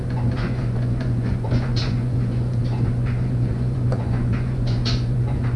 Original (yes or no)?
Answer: no